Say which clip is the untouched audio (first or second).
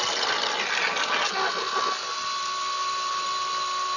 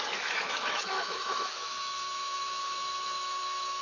first